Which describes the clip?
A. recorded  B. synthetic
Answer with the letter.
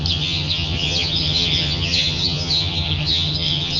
B